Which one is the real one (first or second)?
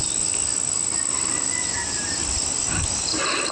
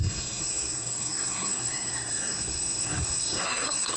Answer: first